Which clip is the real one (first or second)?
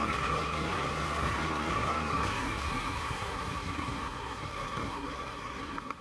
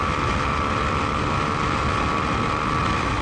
second